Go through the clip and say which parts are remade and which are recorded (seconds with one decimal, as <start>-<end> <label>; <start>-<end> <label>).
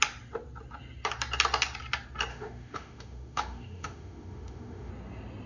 0.0-2.3 recorded; 2.3-4.9 remade; 4.9-5.5 recorded